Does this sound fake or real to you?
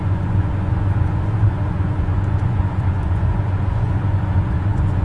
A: fake